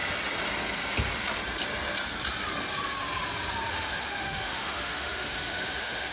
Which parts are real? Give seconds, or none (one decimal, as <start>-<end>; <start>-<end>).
0.0-3.7